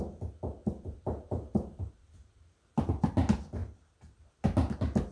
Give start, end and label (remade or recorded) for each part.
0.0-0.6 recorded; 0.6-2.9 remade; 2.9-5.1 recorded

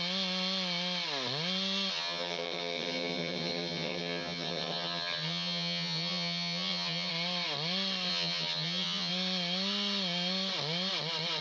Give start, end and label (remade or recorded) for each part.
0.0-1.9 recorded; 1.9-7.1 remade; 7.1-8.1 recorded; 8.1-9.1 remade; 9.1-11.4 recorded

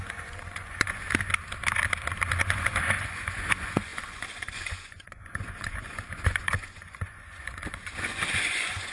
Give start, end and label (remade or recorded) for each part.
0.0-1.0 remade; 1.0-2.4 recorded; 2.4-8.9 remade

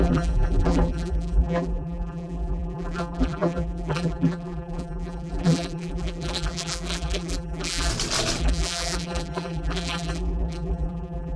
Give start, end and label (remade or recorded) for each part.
0.0-7.9 remade; 7.9-8.4 recorded; 8.4-11.4 remade

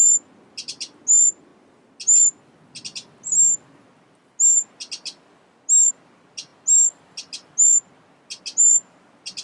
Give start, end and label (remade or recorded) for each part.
0.0-9.4 recorded

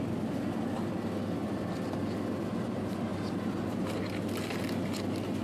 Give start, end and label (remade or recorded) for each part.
0.0-5.4 recorded

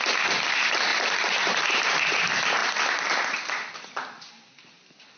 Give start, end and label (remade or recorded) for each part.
0.0-5.2 recorded